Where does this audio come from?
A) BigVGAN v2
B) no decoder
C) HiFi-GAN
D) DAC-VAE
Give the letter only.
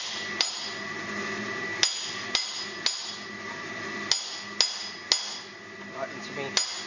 B